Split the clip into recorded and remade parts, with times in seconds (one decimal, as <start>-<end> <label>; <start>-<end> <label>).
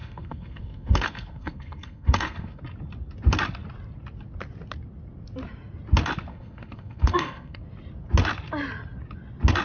0.0-2.6 remade; 2.6-6.3 recorded; 6.3-7.6 remade; 7.6-9.6 recorded